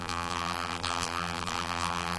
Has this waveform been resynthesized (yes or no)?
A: yes